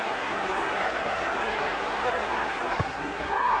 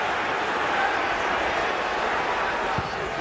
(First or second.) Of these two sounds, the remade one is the first